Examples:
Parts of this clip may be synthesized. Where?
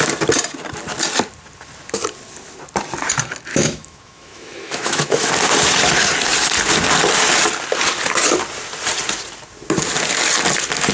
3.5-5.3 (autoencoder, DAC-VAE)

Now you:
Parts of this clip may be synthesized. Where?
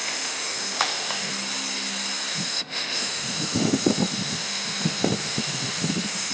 0.0-1.3 (autoencoder, DAC-VAE); 2.3-6.3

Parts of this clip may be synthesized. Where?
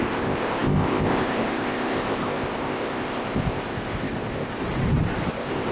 0.0-4.6 (codec, ZipCodec); 5.3-5.7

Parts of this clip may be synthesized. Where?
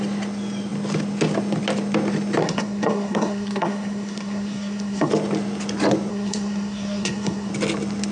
2.4-5.1 (codec, SNAC); 6.1-7.5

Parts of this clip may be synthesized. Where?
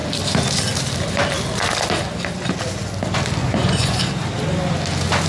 3.4-4.0 (vocoder, Vocos)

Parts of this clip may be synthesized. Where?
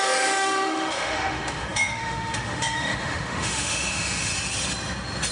0.0-4.3 (autoencoder, DAC-VAE)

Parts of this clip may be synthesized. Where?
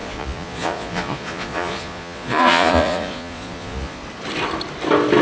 0.0-4.0 (vocoder, Vocos)